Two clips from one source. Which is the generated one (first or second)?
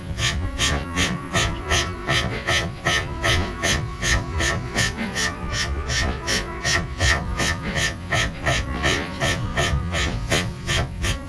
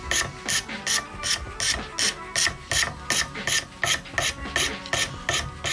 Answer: first